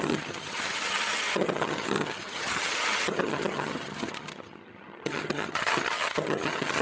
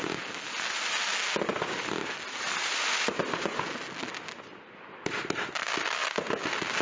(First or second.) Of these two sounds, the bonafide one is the second